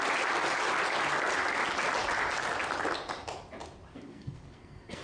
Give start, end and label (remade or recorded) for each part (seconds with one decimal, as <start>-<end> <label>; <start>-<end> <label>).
0.0-3.9 recorded; 3.9-5.0 remade